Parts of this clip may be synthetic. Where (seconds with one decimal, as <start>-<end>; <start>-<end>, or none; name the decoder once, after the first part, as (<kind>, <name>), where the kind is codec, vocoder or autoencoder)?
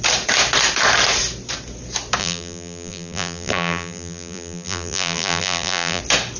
2.2-6.0 (vocoder, BigVGAN v2)